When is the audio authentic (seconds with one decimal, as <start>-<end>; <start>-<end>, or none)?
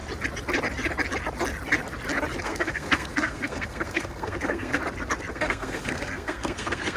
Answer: 0.0-2.4; 4.8-5.3